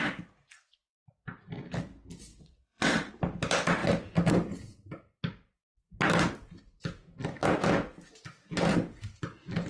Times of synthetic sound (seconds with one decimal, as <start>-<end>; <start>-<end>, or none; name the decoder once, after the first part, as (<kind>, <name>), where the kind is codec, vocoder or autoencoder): 2.3-3.1 (vocoder, WaveNeXt)